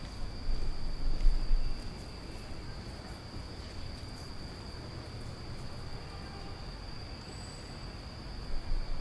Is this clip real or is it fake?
real